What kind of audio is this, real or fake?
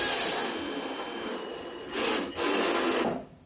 real